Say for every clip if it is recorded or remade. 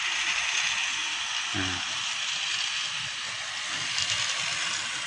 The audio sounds recorded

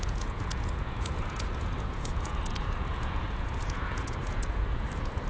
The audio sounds remade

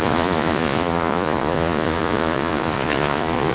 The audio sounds remade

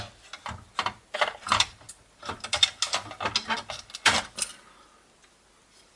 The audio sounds recorded